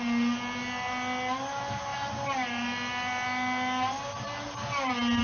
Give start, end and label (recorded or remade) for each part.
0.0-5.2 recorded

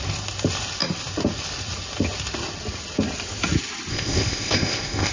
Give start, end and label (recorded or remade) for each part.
0.0-3.9 recorded; 3.9-5.1 remade

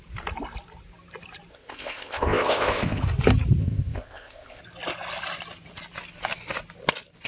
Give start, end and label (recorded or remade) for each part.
0.0-1.5 recorded; 1.5-3.0 remade; 3.0-3.6 recorded; 3.6-4.6 remade; 4.6-7.3 recorded

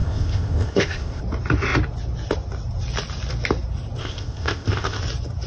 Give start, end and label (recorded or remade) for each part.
0.0-1.2 remade; 1.2-4.0 recorded; 4.0-5.0 remade; 5.0-5.5 recorded